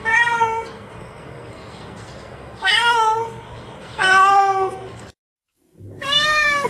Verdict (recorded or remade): remade